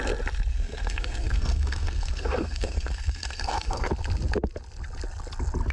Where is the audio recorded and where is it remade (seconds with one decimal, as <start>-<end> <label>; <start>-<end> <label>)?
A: 0.0-0.5 recorded; 0.5-3.9 remade; 3.9-5.7 recorded